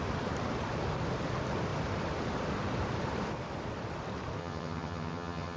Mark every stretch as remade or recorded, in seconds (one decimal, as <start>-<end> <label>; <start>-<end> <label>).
0.0-4.4 recorded; 4.4-5.6 remade